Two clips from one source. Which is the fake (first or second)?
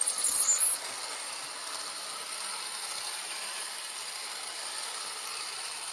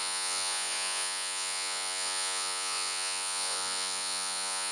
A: second